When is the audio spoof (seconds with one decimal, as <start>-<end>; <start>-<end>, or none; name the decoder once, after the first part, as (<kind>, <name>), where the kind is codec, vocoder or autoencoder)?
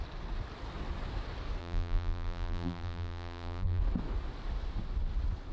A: 1.6-3.8 (vocoder, BigVGAN v2)